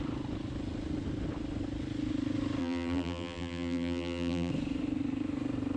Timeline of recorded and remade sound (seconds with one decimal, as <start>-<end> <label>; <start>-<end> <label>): 0.0-2.6 recorded; 2.6-4.5 remade; 4.5-5.8 recorded